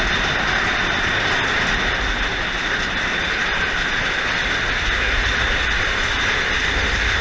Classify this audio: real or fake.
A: real